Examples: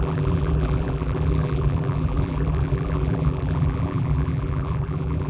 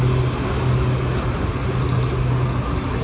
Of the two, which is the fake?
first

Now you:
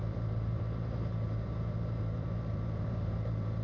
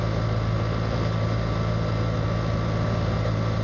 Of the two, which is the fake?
first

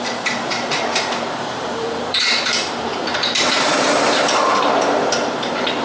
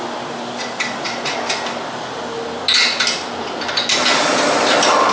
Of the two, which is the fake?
first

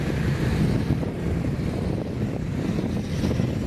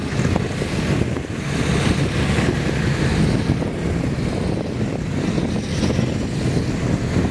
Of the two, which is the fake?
first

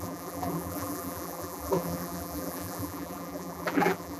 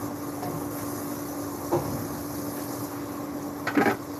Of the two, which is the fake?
first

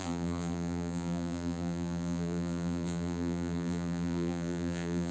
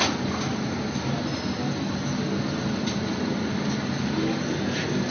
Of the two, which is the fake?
first